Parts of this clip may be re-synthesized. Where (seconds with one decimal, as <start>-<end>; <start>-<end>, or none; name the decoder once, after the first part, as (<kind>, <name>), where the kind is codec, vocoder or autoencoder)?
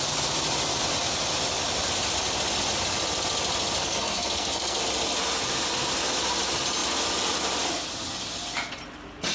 3.8-4.8 (codec, SNAC)